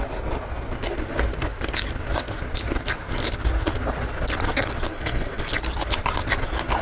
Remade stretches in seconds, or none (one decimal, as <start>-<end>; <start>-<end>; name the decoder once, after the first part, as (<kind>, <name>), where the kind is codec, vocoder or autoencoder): 4.9-5.5 (codec, SNAC)